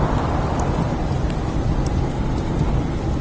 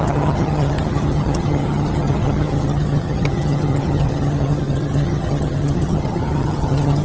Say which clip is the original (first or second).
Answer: first